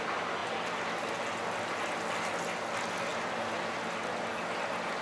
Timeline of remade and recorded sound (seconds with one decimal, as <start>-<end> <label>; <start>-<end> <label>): 0.0-5.0 recorded